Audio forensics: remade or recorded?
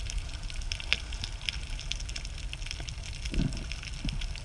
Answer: recorded